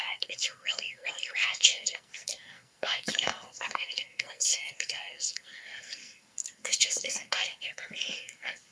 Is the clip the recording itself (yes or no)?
no